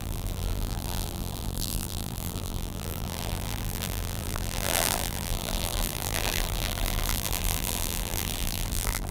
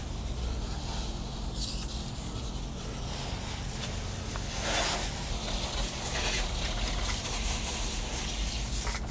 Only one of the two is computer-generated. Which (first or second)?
first